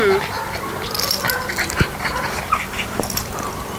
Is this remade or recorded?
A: recorded